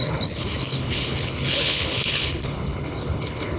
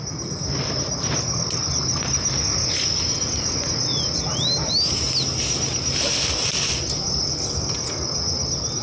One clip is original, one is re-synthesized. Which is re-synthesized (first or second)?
first